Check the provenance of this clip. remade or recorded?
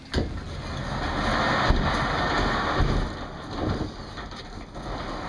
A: recorded